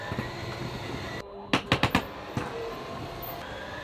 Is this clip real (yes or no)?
yes